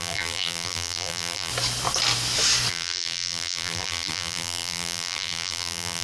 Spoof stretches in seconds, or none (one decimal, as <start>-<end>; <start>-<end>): 0.0-1.5; 2.7-6.0